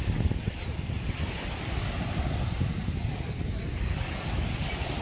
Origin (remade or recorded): recorded